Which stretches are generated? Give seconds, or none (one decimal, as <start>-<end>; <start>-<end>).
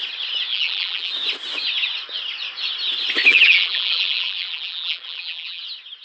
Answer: 0.5-1.1; 3.3-5.6